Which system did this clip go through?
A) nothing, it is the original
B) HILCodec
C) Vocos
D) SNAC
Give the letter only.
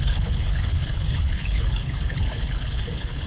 B